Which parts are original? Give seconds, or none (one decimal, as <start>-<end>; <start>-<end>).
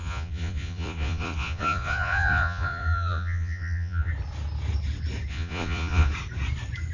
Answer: 4.1-5.3; 6.1-6.9